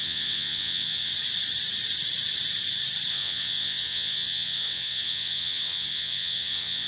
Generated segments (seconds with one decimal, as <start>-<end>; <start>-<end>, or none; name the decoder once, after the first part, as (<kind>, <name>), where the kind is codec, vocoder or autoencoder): 0.0-1.1 (vocoder, WaveNeXt); 3.1-6.9